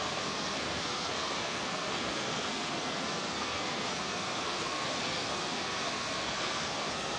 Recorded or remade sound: remade